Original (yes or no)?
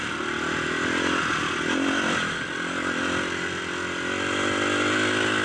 yes